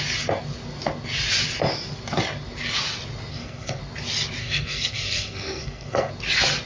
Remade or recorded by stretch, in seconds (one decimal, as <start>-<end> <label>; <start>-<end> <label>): 0.0-3.3 recorded; 3.3-3.8 remade; 3.8-4.4 recorded; 4.4-6.1 remade; 6.1-6.7 recorded